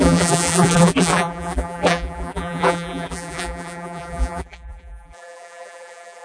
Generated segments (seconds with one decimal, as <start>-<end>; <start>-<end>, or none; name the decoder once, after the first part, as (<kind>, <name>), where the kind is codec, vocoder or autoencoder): 0.0-6.2 (vocoder, BigVGAN v2)